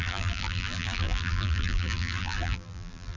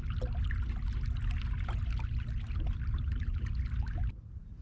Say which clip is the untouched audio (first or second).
second